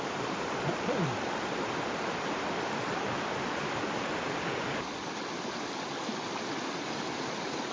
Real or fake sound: fake